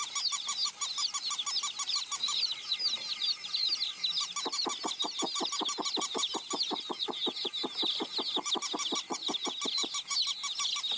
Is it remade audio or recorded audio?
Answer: recorded